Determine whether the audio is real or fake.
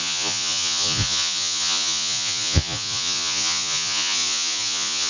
fake